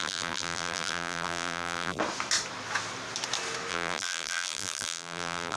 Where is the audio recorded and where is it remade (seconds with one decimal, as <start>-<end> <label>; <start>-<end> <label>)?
0.0-2.0 remade; 2.0-3.7 recorded; 3.7-5.6 remade